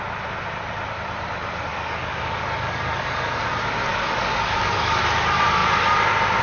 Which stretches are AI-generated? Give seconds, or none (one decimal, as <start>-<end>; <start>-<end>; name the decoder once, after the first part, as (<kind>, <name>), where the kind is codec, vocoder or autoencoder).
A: 1.7-3.5 (codec, DAC); 3.9-5.0